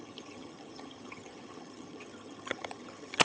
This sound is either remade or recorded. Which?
remade